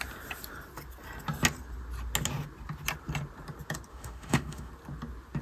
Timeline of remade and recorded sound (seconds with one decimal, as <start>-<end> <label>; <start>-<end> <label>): 0.0-3.9 recorded; 3.9-4.7 remade; 4.7-5.4 recorded